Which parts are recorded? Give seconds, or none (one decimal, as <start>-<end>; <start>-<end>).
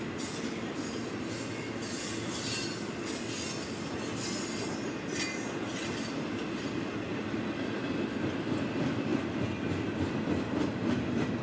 0.0-11.4